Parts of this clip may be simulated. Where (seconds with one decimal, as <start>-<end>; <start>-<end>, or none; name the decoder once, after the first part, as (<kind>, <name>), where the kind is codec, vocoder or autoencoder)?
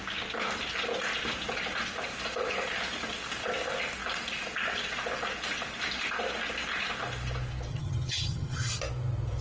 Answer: 7.7-8.8 (vocoder, HiFi-GAN)